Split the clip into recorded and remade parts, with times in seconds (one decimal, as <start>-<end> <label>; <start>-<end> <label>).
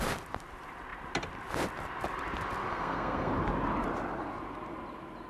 0.0-2.7 recorded; 2.7-3.3 remade; 3.3-5.3 recorded